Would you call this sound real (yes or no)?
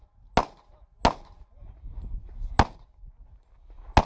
yes